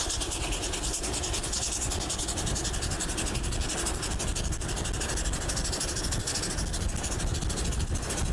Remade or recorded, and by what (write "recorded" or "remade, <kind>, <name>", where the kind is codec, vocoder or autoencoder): recorded